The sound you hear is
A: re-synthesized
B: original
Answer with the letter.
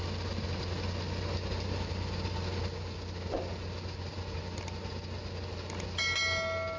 B